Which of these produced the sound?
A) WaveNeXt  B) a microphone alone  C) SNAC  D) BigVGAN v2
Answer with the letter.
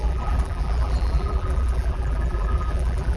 D